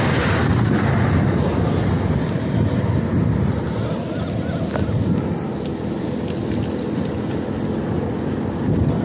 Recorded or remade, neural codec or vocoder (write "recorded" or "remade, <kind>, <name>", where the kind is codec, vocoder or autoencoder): recorded